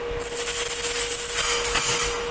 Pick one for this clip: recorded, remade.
recorded